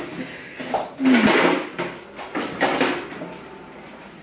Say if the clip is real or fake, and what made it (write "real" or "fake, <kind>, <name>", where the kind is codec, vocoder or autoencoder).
real